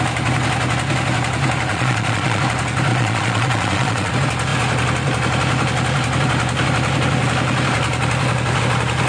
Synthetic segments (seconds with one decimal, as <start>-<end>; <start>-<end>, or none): 1.7-2.4; 2.9-4.1